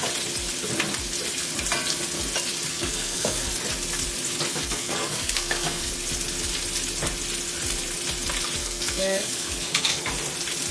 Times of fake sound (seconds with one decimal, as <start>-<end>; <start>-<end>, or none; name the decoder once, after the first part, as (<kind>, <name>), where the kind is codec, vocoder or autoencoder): 2.7-3.5 (codec, SNAC); 4.5-5.9; 8.6-10.1